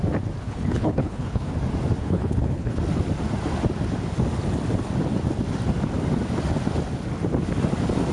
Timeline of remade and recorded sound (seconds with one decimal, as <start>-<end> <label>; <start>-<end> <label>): 0.0-0.4 recorded; 0.4-1.5 remade; 1.5-2.0 recorded; 2.0-2.8 remade; 2.8-8.1 recorded